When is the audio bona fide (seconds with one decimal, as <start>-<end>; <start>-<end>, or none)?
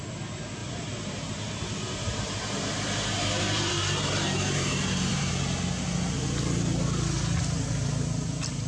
0.0-0.6; 5.3-8.7